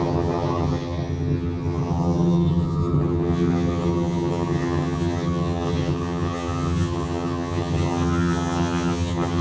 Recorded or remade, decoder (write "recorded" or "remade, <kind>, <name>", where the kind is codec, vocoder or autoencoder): remade, vocoder, HiFi-GAN